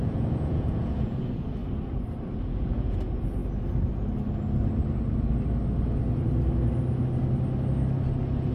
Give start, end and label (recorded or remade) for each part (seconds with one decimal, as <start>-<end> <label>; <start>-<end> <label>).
0.0-1.6 remade; 1.6-2.4 recorded; 2.4-3.4 remade; 3.4-8.5 recorded